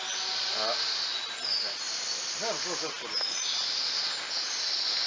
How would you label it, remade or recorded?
recorded